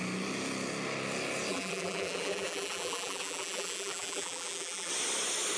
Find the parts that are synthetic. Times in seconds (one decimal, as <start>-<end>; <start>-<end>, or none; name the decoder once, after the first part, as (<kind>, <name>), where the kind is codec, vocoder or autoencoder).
1.5-4.9 (vocoder, BigVGAN v2)